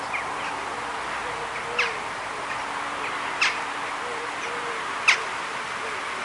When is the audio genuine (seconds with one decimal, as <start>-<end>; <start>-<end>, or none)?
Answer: 0.0-6.2